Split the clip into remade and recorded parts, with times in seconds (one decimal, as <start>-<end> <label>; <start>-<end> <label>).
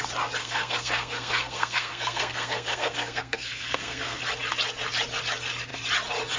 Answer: 0.0-0.4 recorded; 0.4-4.2 remade; 4.2-6.4 recorded